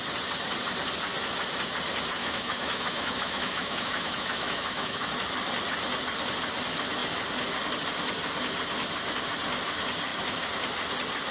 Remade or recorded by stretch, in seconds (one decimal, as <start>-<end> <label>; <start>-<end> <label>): 0.0-2.2 recorded; 2.2-5.1 remade; 5.1-11.3 recorded